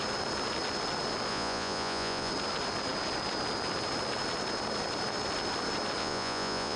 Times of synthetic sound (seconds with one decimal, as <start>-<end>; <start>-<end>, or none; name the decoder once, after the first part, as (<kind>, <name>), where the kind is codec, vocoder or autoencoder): 1.3-2.3 (vocoder, Vocos); 6.0-6.8

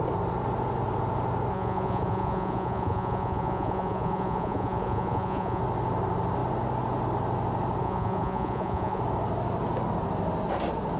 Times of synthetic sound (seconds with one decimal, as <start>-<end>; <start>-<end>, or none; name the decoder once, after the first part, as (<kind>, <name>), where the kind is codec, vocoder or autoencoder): 1.5-5.6 (vocoder, Vocos); 7.8-9.0

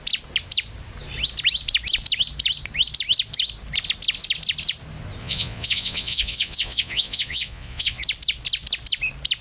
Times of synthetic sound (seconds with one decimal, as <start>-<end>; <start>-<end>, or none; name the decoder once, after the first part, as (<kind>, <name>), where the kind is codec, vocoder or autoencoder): 5.2-8.0 (vocoder, Vocos)

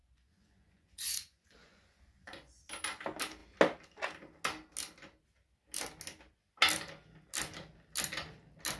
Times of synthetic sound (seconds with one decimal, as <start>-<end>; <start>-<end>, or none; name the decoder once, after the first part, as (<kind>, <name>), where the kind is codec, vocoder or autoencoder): 0.0-2.6 (vocoder, Vocos)

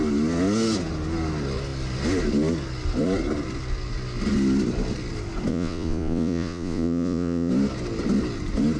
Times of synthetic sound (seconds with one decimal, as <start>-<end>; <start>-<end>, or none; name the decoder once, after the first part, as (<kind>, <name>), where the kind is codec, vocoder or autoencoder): 5.5-7.5 (vocoder, Vocos)

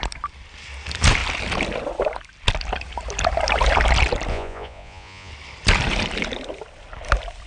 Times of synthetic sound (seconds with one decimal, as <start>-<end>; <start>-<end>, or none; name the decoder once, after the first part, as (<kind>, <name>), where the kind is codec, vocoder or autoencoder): 4.3-5.3 (vocoder, Vocos)

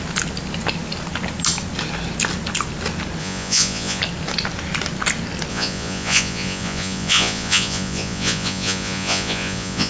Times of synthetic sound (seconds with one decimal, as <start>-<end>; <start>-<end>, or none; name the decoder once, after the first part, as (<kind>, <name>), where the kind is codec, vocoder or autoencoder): 3.2-4.0 (vocoder, Vocos); 5.5-9.9

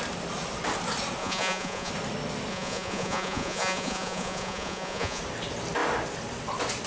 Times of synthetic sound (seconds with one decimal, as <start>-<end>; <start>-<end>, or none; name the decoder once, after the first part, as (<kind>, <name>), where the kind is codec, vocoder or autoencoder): 1.2-1.9 (vocoder, Vocos); 2.5-5.2